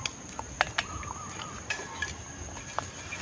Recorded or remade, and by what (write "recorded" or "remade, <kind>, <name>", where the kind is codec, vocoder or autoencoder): recorded